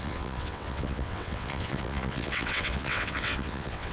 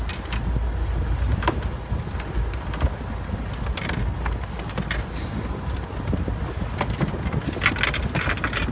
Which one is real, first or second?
second